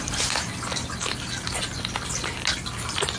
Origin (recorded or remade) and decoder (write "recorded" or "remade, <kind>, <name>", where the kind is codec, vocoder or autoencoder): recorded